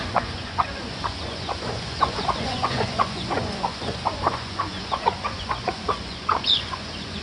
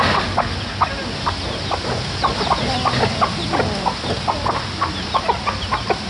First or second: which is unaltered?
second